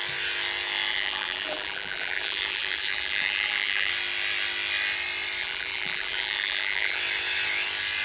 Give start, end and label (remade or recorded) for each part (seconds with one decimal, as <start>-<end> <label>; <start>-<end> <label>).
0.0-0.9 recorded; 0.9-3.9 remade; 3.9-5.4 recorded; 5.4-7.0 remade; 7.0-8.0 recorded